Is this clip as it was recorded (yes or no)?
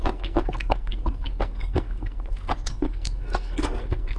no